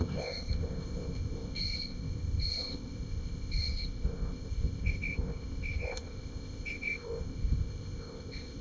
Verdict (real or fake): fake